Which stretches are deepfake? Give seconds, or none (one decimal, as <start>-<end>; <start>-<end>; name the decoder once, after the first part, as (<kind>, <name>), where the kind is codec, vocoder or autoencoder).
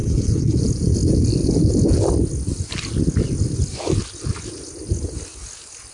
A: 0.0-0.6 (codec, HILCodec)